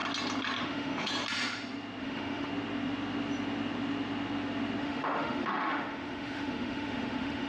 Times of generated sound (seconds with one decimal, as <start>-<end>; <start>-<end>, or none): 0.6-1.1; 2.0-2.5; 4.8-7.5